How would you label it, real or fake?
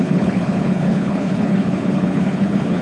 fake